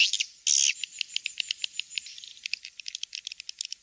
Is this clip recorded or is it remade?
recorded